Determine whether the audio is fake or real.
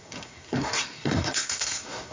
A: fake